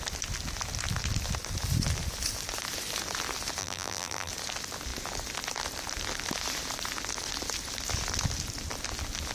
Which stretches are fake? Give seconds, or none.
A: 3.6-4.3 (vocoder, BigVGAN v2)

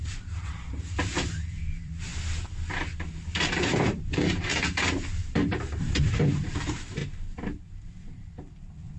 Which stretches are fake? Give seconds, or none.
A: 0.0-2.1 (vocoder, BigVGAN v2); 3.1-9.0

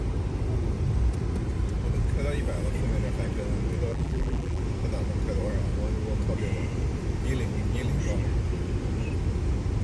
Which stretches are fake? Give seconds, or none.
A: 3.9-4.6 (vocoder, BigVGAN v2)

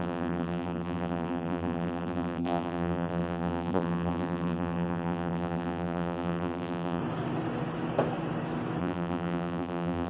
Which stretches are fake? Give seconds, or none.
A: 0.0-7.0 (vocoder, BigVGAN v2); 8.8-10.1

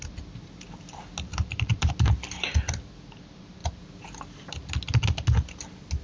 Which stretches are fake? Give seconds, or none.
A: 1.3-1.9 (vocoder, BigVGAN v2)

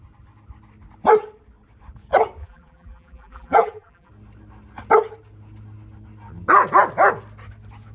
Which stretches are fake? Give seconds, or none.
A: 2.4-4.1 (vocoder, BigVGAN v2)

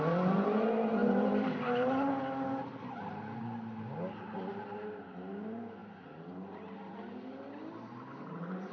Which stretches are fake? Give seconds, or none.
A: 1.0-2.2 (vocoder, BigVGAN v2)

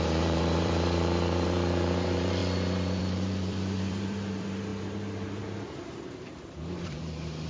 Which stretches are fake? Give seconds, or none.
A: 0.0-2.4 (vocoder, BigVGAN v2); 3.0-7.5